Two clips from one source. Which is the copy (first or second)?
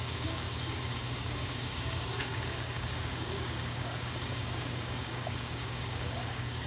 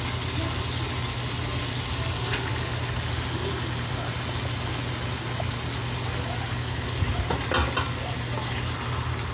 first